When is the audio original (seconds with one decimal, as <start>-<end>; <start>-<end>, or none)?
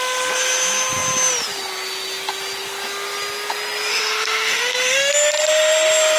0.0-3.9; 5.1-6.2